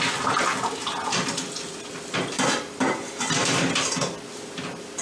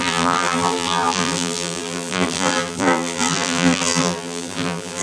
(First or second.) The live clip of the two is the first